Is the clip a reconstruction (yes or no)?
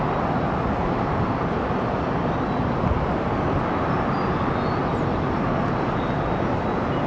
no